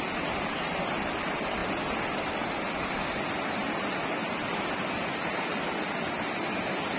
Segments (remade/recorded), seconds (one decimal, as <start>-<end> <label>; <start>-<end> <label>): 0.0-7.0 recorded